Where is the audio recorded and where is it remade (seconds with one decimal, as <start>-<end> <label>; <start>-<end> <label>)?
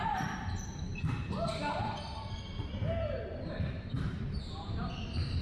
0.0-0.9 remade; 0.9-3.1 recorded; 3.1-5.4 remade